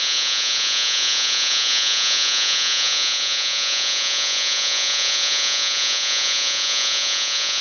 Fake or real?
fake